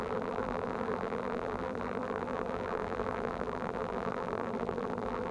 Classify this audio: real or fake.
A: fake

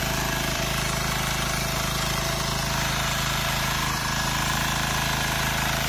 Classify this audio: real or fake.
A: fake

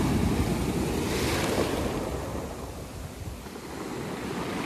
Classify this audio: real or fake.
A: real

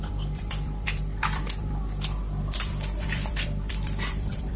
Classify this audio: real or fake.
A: fake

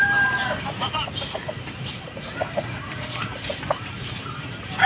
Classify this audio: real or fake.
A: fake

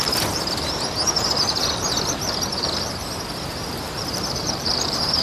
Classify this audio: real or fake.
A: fake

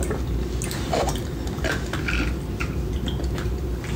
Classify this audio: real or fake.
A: real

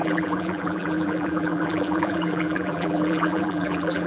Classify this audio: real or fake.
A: fake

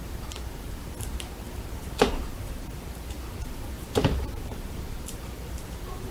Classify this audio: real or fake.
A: fake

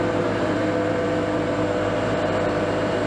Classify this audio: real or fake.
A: fake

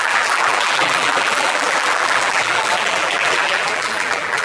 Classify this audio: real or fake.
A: fake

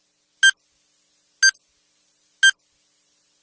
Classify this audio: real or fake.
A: real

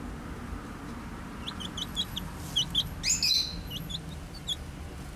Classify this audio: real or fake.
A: real